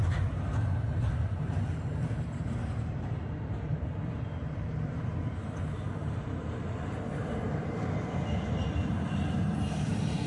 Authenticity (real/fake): fake